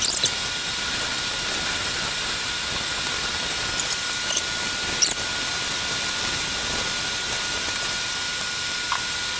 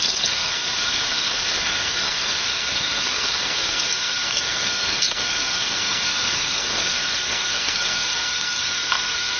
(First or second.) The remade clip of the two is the second